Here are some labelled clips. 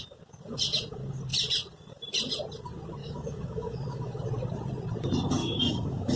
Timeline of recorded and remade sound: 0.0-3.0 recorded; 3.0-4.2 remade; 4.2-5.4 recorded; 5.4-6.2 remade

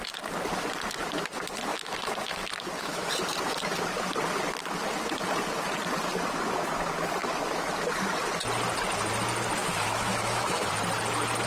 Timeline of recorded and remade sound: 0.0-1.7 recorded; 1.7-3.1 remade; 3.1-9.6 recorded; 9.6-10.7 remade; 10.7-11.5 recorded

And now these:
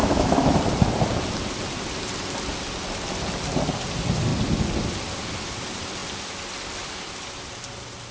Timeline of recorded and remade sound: 0.0-0.6 remade; 0.6-8.1 recorded

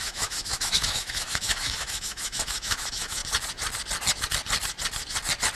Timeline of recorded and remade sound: 0.0-3.2 remade; 3.2-5.6 recorded

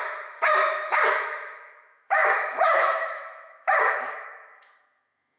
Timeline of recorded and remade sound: 0.0-5.4 remade

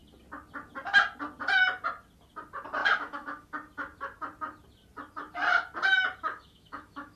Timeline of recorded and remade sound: 0.0-2.8 recorded; 2.8-3.5 remade; 3.5-6.3 recorded; 6.3-7.2 remade

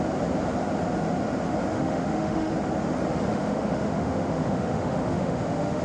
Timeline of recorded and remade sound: 0.0-1.7 recorded; 1.7-2.5 remade; 2.5-3.3 recorded; 3.3-5.8 remade